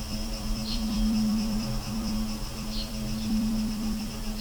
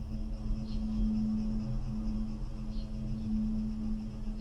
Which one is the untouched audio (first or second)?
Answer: second